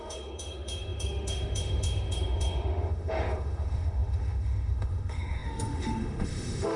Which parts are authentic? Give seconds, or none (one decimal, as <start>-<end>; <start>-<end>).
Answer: none